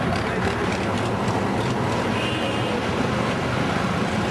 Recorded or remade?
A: recorded